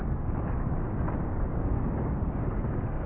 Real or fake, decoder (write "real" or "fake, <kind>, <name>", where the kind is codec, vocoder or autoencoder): fake, codec, DAC